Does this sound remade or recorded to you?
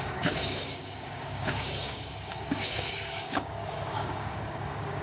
remade